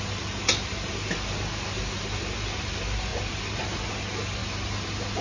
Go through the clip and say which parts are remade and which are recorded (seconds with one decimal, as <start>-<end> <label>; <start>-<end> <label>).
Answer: 0.0-5.2 recorded